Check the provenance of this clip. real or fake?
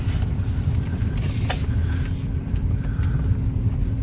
real